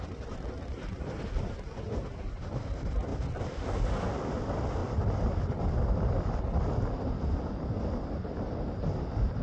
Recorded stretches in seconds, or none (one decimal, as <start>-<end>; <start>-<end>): 0.0-3.1; 3.7-4.8; 6.4-9.4